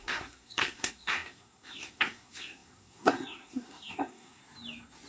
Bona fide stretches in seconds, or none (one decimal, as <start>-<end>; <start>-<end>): 4.4-5.1